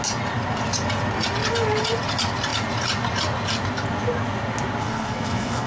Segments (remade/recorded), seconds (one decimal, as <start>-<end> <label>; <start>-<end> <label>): 0.0-4.8 recorded; 4.8-5.7 remade